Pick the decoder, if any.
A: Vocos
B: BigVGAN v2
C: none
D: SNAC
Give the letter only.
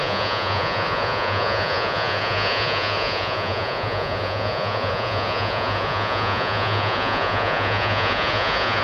A